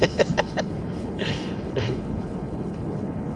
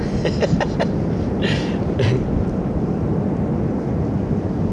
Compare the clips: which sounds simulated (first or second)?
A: first